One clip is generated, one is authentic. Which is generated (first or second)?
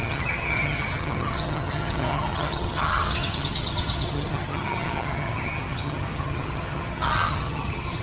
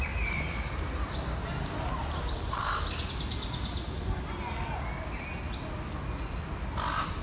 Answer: first